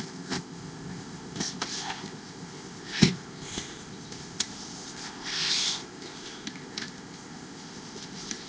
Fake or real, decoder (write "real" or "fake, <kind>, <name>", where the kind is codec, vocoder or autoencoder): fake, codec, ZipCodec